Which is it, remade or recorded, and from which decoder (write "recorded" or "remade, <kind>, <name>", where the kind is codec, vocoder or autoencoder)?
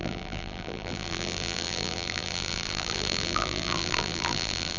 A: remade, vocoder, BigVGAN v2